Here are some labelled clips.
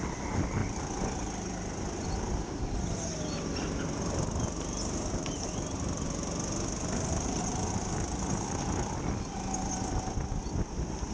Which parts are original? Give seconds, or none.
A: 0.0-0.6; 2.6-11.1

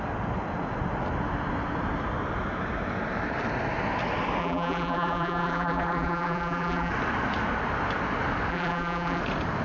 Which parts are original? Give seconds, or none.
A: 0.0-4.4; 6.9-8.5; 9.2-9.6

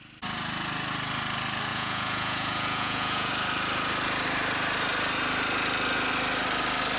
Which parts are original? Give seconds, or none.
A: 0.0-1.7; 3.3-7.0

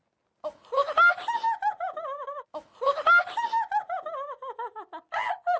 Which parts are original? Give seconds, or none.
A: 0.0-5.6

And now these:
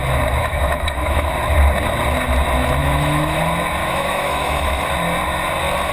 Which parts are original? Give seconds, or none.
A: 0.0-0.4; 1.3-2.8; 3.4-3.8; 4.8-5.9

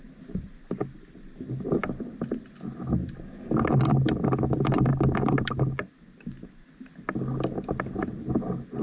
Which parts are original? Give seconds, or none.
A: 0.0-8.8